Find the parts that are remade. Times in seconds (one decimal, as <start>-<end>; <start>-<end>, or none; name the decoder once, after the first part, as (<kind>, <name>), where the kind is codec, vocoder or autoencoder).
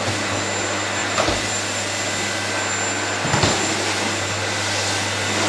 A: 1.0-1.5 (vocoder, BigVGAN v2)